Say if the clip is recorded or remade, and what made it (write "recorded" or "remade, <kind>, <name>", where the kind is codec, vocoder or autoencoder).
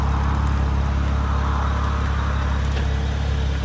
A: recorded